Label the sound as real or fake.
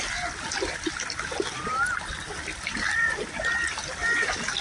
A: real